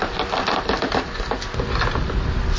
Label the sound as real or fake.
real